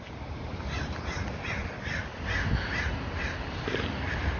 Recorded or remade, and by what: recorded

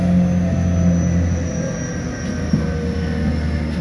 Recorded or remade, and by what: recorded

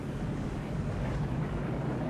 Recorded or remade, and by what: remade, codec, DAC